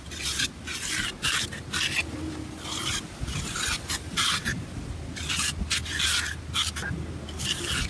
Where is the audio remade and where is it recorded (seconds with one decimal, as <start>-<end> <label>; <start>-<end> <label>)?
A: 0.0-7.9 recorded